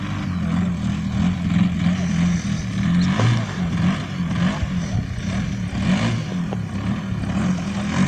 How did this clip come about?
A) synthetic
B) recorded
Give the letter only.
B